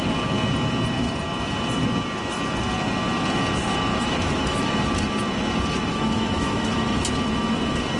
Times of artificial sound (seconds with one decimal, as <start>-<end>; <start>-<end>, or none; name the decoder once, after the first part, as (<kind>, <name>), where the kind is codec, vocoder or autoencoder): 3.9-4.8 (autoencoder, DAC-VAE); 5.9-7.0

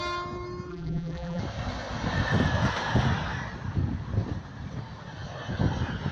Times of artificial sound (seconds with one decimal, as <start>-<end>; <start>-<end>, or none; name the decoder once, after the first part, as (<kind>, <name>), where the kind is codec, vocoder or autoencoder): 0.7-1.4 (vocoder, BigVGAN v2)

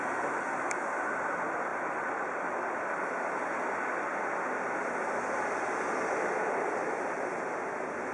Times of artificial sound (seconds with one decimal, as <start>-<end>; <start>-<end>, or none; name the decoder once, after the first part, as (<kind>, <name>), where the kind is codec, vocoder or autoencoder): none

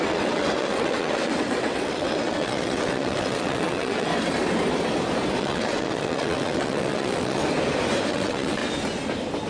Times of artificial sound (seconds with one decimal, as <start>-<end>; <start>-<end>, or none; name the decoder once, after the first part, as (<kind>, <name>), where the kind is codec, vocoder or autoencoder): 0.0-4.1 (vocoder, WaveNeXt); 5.4-7.4; 8.1-8.6

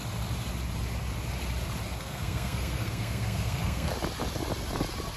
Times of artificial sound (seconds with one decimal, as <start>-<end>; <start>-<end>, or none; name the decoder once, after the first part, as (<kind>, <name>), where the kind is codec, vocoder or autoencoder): 2.0-3.9 (codec, SNAC)